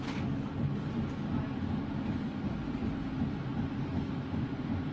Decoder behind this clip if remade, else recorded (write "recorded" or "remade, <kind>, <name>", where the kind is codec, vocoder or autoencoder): recorded